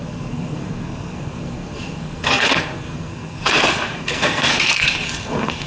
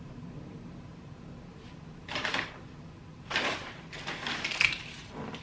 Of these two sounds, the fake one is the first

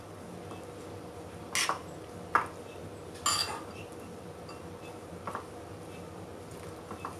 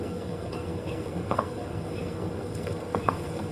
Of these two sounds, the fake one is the second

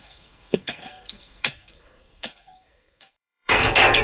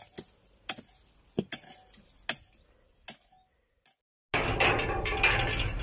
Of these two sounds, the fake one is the first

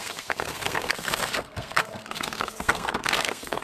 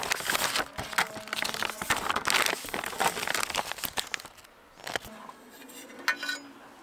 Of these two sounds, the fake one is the first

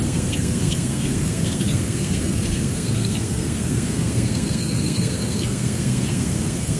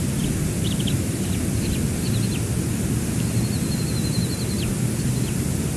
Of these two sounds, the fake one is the first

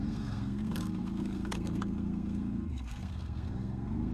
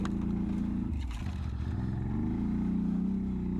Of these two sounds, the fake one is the first